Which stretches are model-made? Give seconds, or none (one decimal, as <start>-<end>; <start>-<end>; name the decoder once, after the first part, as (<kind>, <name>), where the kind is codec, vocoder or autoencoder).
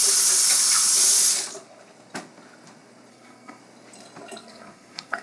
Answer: 3.1-3.6 (codec, SNAC); 4.4-5.2